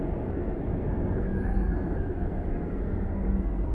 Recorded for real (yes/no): no